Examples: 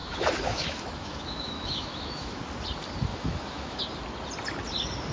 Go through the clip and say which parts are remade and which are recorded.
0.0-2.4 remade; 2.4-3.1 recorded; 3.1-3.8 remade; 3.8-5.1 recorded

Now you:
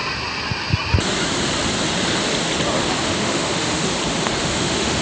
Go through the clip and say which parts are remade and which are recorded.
0.0-3.0 recorded; 3.0-3.9 remade; 3.9-4.4 recorded; 4.4-5.0 remade